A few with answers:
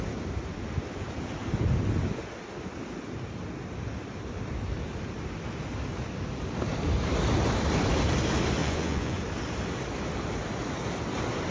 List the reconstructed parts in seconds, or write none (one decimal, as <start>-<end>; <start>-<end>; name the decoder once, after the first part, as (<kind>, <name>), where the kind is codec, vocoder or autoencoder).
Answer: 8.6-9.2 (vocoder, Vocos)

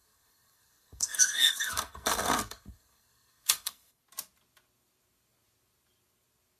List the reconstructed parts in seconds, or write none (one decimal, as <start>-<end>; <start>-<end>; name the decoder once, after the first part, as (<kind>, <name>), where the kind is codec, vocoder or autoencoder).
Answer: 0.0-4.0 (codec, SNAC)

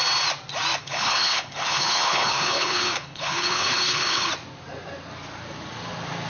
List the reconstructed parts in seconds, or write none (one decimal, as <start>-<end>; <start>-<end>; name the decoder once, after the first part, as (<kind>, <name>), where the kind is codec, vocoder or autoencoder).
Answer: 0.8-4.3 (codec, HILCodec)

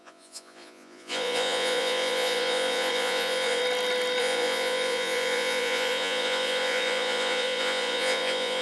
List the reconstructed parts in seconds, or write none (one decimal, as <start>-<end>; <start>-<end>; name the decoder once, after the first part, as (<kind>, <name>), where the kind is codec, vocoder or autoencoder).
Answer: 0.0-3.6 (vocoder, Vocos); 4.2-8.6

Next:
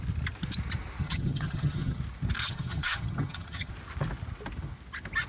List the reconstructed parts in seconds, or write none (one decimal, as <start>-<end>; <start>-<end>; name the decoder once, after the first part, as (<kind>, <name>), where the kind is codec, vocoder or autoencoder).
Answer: 1.0-2.0 (vocoder, HiFi-GAN); 2.4-3.7

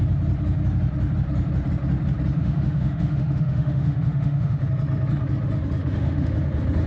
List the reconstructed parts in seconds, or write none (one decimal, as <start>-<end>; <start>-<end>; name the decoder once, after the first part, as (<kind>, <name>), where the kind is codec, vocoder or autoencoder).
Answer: 2.4-4.6 (autoencoder, DAC-VAE); 5.8-6.3